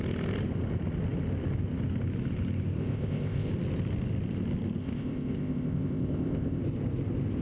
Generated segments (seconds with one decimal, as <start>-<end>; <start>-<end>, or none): 2.8-3.5; 4.8-6.6

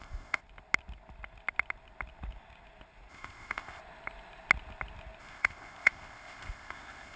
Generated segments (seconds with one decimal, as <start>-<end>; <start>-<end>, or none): 0.0-0.4; 3.1-3.8; 5.2-7.2

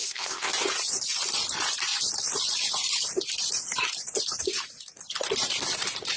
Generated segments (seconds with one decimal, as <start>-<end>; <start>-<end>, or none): 0.0-0.5

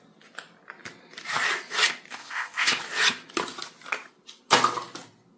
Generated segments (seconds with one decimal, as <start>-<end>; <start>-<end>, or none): 2.1-2.8